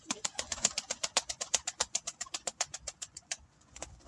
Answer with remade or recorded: remade